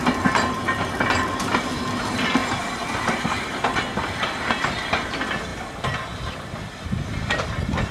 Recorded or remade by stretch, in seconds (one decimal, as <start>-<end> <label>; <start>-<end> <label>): 0.0-5.5 remade; 5.5-6.3 recorded; 6.3-7.9 remade